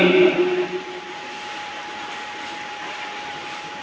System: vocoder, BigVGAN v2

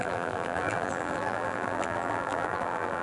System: vocoder, BigVGAN v2